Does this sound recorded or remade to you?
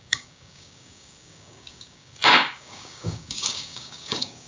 remade